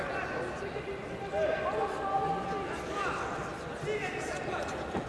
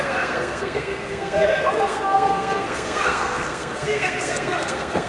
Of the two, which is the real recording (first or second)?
first